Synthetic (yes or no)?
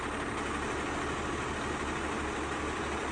no